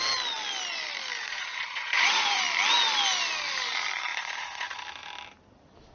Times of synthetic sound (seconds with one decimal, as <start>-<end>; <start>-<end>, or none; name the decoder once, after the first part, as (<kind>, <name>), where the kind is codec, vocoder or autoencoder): 1.2-2.4 (vocoder, Vocos); 4.1-4.8